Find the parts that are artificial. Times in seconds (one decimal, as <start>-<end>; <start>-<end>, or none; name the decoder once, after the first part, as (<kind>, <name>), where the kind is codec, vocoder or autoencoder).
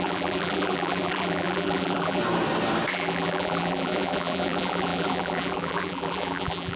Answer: 0.0-2.2 (vocoder, BigVGAN v2); 2.9-6.8